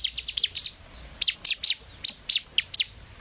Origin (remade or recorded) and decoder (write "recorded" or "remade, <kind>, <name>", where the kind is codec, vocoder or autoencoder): recorded